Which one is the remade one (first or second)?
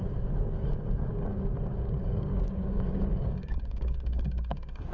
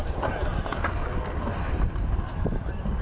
first